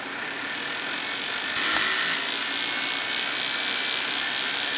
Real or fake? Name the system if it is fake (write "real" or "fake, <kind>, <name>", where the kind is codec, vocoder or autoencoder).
real